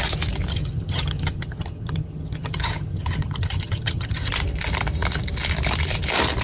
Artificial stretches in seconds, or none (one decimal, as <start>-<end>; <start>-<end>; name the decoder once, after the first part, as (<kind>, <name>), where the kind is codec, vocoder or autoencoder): 0.5-4.3 (vocoder, HiFi-GAN)